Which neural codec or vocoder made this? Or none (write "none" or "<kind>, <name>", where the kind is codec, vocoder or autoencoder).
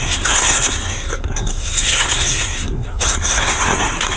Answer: codec, SNAC